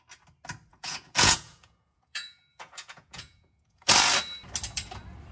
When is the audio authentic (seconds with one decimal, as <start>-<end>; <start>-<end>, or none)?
0.0-0.7; 3.9-5.3

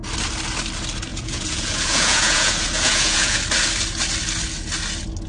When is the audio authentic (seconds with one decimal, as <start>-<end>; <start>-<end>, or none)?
0.0-1.1; 3.4-5.3

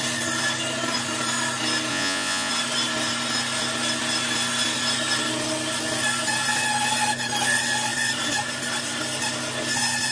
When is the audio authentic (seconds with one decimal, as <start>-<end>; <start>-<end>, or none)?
0.0-1.9; 2.5-10.1